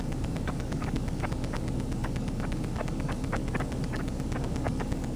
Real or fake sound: fake